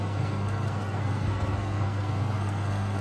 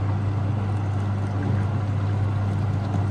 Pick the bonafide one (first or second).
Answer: second